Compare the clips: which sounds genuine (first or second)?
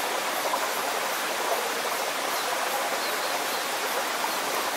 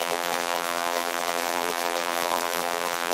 first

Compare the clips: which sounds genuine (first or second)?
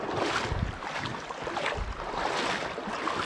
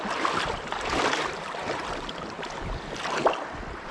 first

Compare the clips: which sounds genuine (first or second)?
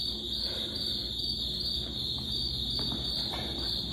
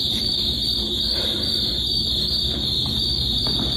first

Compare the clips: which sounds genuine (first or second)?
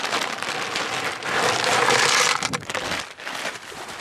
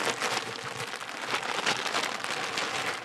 second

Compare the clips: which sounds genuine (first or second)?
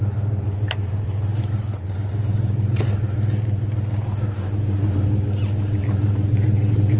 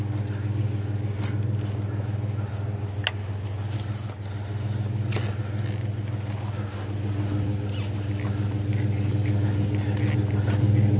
second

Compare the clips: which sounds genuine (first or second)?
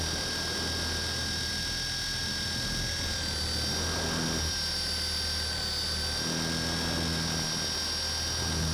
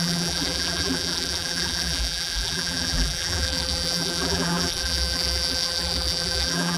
first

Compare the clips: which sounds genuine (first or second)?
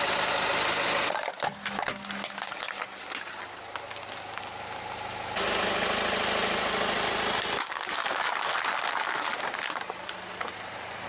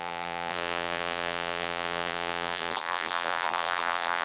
first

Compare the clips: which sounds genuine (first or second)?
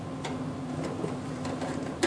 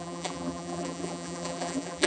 first